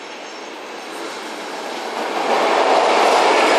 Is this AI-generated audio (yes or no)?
no